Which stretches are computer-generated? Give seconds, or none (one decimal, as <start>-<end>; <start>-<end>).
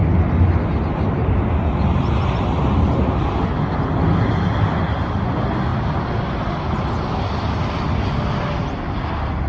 none